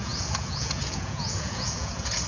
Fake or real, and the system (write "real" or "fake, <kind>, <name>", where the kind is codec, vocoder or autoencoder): fake, vocoder, Vocos